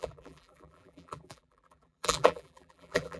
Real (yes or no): no